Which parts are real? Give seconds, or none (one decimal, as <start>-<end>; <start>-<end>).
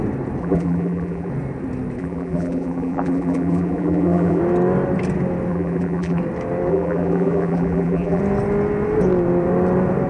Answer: 0.0-0.4; 1.3-2.0; 4.4-5.5; 6.2-6.7; 8.2-10.1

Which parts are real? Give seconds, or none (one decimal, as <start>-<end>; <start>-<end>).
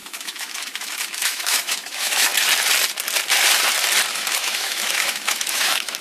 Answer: 2.3-4.1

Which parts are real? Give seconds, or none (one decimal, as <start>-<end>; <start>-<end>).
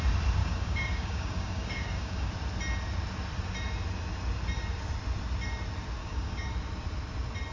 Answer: 0.0-0.4; 2.3-6.0; 6.5-7.5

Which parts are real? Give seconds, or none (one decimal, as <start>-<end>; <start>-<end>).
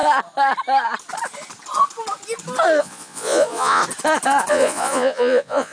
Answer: 0.0-2.8; 3.8-4.5